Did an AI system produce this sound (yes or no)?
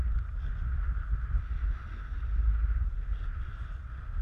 no